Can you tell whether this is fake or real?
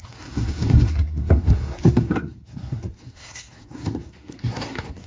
fake